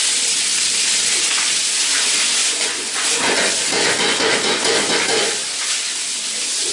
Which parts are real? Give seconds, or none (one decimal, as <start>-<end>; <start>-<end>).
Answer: 0.0-2.4; 5.7-6.7